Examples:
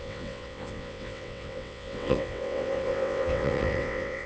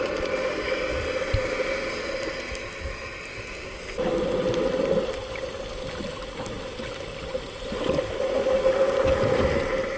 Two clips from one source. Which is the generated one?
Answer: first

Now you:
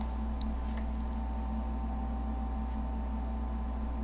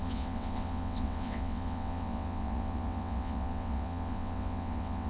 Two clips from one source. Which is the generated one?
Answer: second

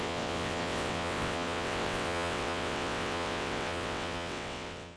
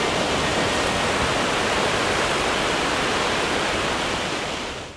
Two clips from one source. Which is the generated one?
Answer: first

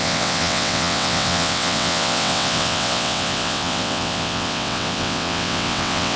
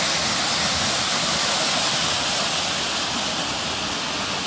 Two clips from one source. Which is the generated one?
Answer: first